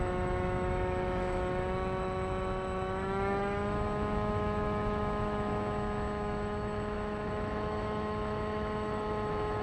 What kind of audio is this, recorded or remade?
remade